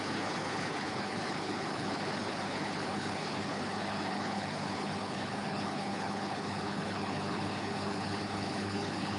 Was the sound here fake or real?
fake